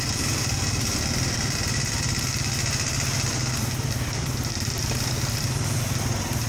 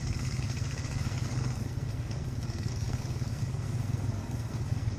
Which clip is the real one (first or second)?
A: first